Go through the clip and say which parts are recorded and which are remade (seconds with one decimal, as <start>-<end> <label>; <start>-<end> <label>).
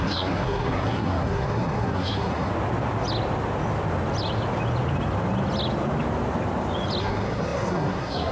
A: 0.0-2.5 remade; 2.5-7.0 recorded; 7.0-8.3 remade